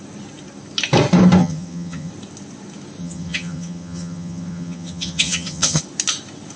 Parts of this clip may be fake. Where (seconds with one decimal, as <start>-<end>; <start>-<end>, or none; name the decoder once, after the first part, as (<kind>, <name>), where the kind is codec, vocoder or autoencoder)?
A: 1.4-2.1 (vocoder, HiFi-GAN); 3.0-5.8